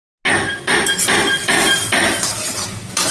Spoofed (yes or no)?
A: no